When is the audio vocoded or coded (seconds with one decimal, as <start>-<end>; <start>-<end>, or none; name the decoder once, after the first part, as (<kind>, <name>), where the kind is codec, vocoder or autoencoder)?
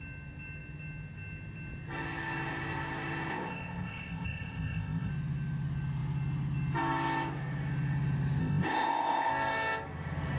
3.3-5.1 (codec, ZipCodec); 8.4-9.3